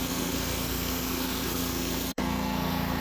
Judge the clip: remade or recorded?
remade